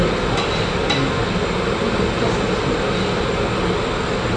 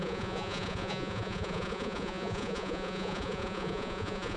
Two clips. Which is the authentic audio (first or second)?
first